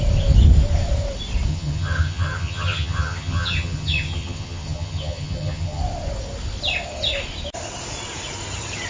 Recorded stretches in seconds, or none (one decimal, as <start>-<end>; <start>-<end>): 0.0-1.5; 5.8-8.9